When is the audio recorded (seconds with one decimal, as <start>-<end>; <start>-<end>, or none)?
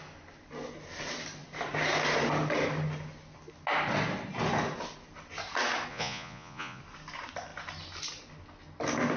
0.0-5.9; 6.8-9.2